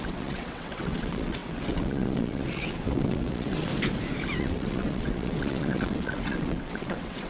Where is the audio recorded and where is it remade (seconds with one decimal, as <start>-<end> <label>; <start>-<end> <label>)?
0.0-3.7 remade; 3.7-4.4 recorded; 4.4-7.3 remade